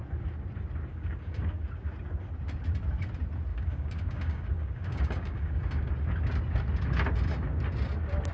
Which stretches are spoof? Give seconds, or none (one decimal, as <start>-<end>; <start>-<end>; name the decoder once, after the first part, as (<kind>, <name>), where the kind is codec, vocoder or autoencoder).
0.9-1.6 (codec, DAC); 3.5-5.9